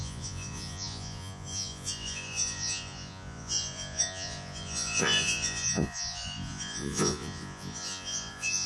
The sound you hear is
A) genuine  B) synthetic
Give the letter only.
B